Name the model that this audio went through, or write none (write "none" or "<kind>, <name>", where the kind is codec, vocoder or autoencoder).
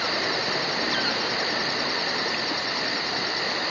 none